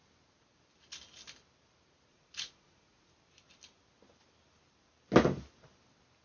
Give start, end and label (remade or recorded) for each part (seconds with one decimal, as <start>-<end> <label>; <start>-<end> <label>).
0.0-2.1 recorded; 2.1-3.1 remade; 3.1-6.2 recorded